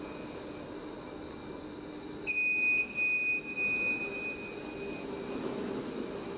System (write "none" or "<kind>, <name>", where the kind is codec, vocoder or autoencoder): none